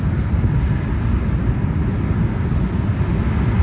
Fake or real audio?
real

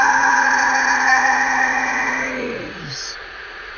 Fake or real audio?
fake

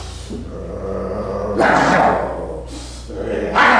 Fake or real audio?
real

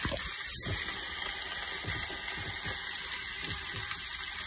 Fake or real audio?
real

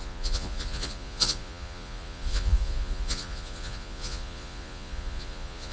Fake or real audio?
fake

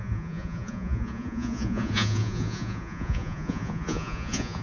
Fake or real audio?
fake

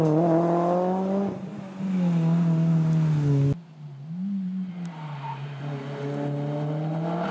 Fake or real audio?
real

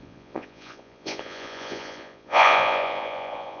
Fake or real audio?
fake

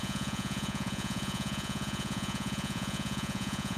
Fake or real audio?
fake